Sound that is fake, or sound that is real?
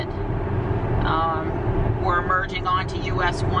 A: real